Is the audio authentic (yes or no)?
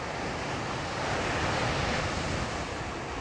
yes